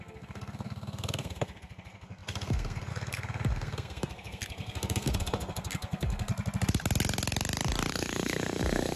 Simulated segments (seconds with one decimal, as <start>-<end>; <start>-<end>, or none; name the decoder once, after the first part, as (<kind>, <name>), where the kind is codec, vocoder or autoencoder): 0.0-6.3 (codec, SNAC); 7.9-9.0